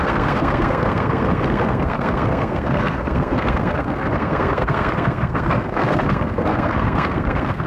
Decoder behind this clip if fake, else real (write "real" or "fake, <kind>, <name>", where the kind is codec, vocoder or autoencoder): fake, codec, SNAC